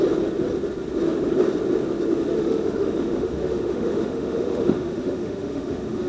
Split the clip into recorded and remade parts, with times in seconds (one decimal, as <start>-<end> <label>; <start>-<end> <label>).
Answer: 0.0-2.4 recorded; 2.4-6.1 remade